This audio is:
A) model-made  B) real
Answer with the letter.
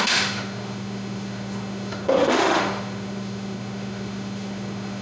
A